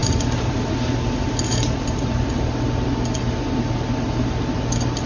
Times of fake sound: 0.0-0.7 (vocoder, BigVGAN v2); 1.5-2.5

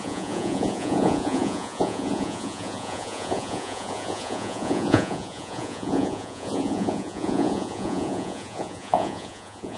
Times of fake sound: 0.0-9.8 (vocoder, Vocos)

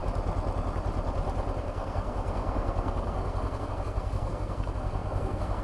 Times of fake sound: 1.6-5.6 (codec, SNAC)

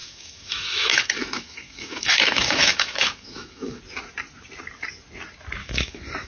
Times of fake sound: 0.0-3.8 (autoencoder, DAC-VAE); 5.6-6.3

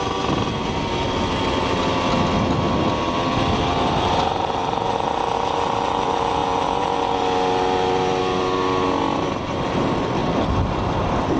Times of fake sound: none

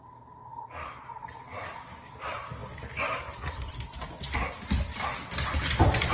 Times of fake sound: none